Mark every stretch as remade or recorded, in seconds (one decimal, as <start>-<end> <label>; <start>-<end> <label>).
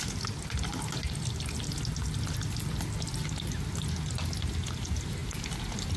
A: 0.0-6.0 recorded